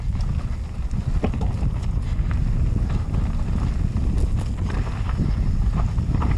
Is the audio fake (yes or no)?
no